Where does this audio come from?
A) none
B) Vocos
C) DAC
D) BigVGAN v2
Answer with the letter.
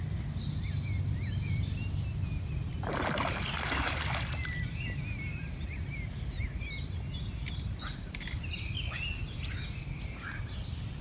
A